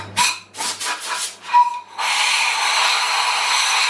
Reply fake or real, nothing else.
real